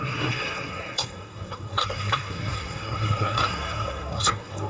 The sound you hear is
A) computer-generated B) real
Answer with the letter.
A